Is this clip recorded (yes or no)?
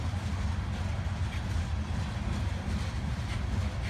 yes